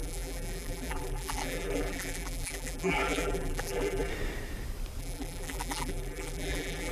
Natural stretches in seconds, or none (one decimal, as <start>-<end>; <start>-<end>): 4.1-5.0